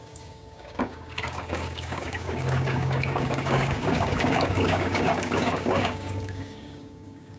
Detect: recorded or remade remade